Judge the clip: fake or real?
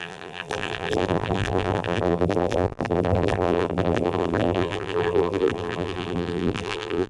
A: fake